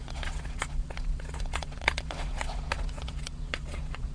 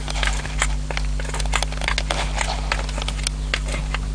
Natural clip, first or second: second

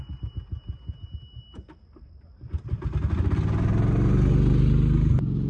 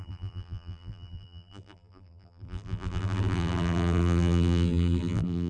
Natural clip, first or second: first